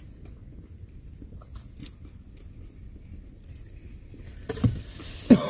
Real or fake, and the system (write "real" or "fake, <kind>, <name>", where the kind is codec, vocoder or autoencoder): real